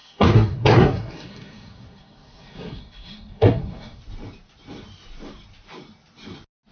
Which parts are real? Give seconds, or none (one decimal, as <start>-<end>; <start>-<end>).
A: 4.0-6.7